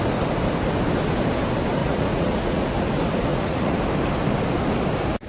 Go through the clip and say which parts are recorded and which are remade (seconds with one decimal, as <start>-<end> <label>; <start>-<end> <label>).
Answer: 0.0-1.8 recorded; 1.8-2.8 remade; 2.8-3.3 recorded; 3.3-3.8 remade; 3.8-5.3 recorded